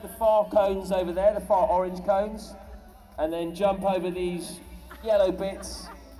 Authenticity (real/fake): real